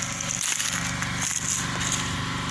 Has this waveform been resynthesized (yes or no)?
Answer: no